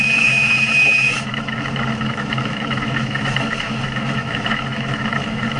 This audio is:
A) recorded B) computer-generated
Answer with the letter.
B